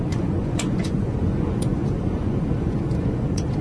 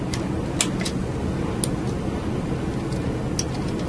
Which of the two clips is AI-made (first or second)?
first